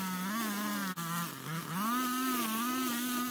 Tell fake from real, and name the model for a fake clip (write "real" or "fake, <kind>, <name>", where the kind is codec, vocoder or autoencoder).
real